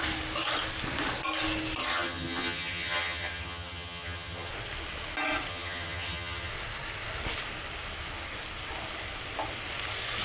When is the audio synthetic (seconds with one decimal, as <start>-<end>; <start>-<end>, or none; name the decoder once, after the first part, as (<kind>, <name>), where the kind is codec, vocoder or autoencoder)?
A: 1.9-4.5 (vocoder, HiFi-GAN); 5.5-6.5